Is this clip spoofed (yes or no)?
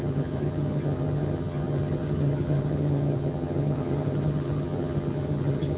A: yes